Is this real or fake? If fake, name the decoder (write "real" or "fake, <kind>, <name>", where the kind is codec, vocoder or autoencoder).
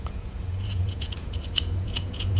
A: fake, vocoder, Vocos